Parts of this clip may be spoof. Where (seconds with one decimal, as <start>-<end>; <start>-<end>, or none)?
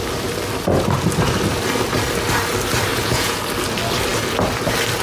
2.9-3.4